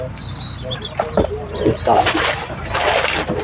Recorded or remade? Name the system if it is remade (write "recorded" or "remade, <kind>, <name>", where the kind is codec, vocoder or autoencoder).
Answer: remade, vocoder, BigVGAN v2